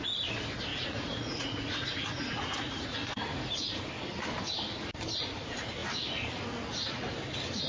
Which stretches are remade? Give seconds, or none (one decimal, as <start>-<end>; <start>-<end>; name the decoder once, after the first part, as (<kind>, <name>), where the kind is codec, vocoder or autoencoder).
0.7-3.5 (vocoder, Vocos)